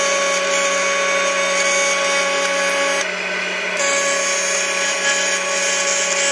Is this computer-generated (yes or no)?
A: no